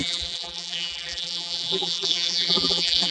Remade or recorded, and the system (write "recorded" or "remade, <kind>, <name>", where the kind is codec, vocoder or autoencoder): remade, vocoder, BigVGAN v2